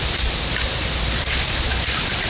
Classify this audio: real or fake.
fake